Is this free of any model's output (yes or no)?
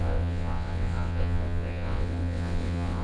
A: no